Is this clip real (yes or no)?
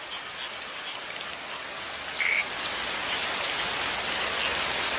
yes